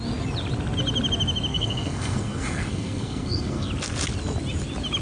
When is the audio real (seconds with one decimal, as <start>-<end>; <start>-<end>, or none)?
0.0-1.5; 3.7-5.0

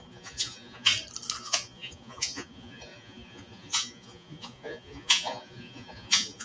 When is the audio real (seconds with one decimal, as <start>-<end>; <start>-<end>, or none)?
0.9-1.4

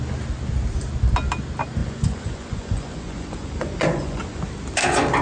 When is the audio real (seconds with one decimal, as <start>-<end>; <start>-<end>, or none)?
0.0-1.8; 4.4-5.2